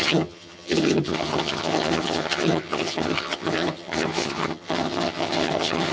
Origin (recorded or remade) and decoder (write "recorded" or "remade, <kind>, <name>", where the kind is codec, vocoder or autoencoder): remade, vocoder, HiFi-GAN